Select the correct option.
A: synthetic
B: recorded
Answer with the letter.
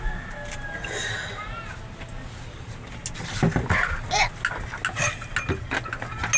B